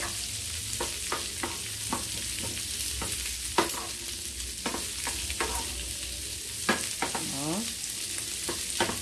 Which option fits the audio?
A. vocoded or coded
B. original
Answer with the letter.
B